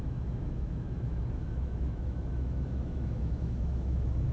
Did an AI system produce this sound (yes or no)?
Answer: yes